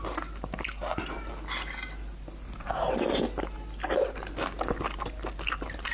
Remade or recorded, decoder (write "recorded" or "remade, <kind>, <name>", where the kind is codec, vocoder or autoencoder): recorded